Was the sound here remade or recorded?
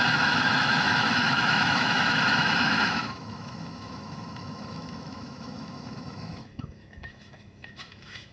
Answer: remade